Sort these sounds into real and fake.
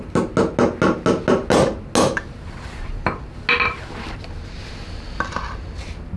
real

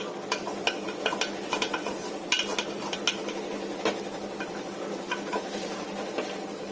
real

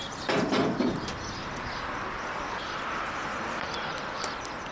fake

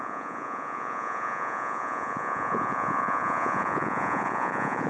fake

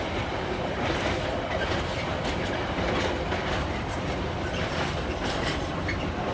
real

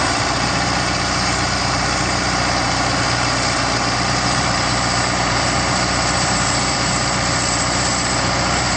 fake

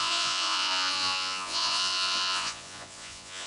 fake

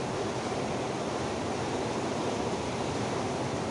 fake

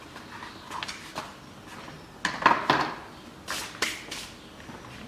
real